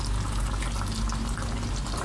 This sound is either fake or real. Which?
real